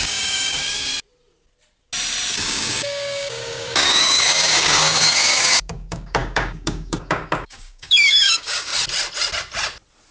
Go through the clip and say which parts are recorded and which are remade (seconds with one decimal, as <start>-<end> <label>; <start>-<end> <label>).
0.0-0.9 remade; 0.9-2.3 recorded; 2.3-8.7 remade; 8.7-10.1 recorded